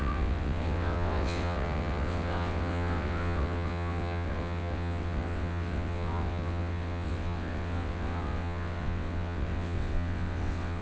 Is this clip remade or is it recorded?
remade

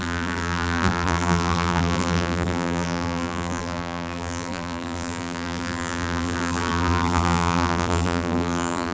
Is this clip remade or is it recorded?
remade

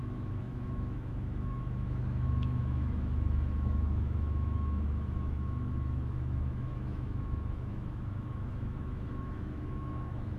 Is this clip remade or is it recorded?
remade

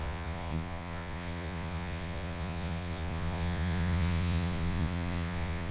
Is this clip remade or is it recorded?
remade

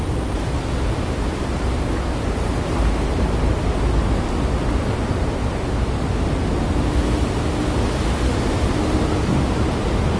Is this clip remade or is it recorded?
recorded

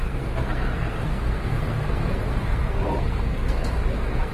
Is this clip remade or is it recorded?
remade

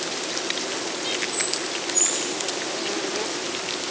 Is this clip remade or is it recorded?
recorded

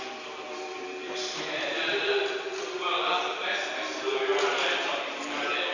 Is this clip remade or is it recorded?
remade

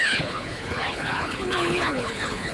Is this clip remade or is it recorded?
remade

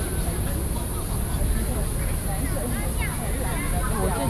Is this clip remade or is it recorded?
recorded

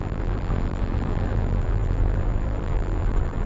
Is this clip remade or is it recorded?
remade